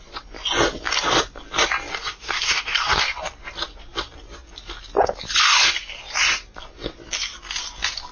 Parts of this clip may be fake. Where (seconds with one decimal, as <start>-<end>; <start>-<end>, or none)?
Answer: 1.9-3.0